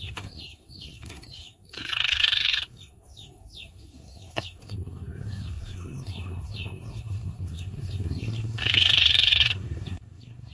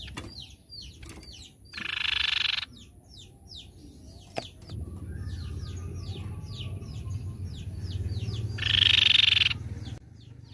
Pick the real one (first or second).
second